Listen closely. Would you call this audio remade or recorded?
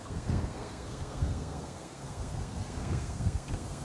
remade